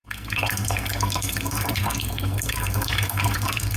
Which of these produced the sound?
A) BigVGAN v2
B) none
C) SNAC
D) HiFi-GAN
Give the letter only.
C